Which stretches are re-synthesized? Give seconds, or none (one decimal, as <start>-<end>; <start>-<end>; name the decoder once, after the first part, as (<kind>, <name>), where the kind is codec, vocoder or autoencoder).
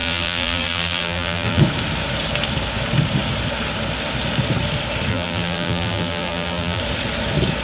0.0-1.6 (vocoder, BigVGAN v2); 5.1-6.8